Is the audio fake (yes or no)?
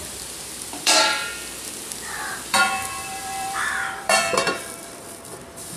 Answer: yes